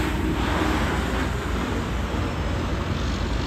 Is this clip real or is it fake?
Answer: real